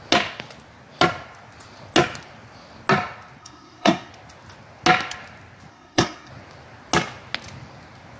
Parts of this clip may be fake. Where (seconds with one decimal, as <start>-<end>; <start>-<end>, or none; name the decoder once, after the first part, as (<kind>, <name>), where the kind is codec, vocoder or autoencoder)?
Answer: 3.4-4.1 (codec, SNAC); 5.7-6.3